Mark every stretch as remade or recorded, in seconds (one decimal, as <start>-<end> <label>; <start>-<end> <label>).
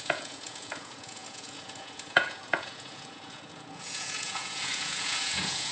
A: 0.0-5.7 remade